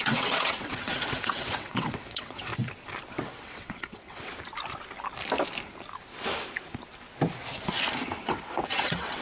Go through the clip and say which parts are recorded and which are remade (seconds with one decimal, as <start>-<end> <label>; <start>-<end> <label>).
0.0-2.5 remade; 2.5-3.1 recorded; 3.1-4.3 remade; 4.3-8.2 recorded; 8.2-9.2 remade